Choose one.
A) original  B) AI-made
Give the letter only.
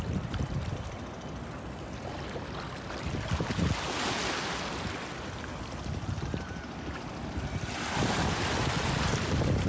A